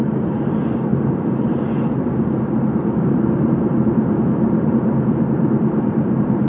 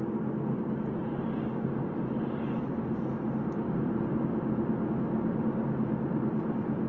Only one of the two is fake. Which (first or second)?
first